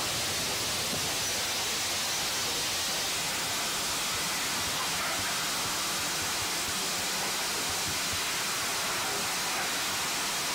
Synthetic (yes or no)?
no